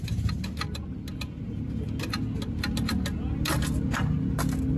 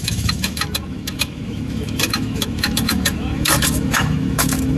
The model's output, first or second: second